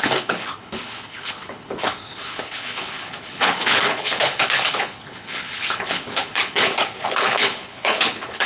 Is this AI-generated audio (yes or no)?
yes